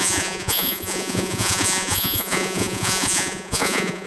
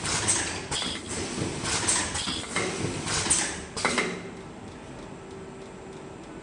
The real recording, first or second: second